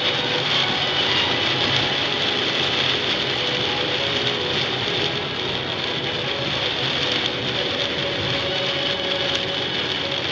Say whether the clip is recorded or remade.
recorded